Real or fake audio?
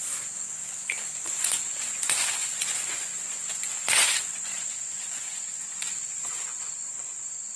fake